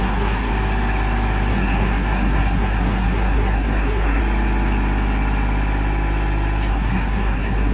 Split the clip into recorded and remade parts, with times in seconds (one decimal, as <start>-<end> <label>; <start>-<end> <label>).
0.0-0.5 remade; 0.5-1.5 recorded; 1.5-4.2 remade; 4.2-6.7 recorded; 6.7-7.7 remade